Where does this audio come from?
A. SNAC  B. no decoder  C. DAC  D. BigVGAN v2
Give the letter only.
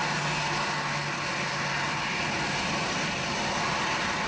B